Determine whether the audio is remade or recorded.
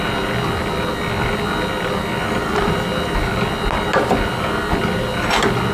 recorded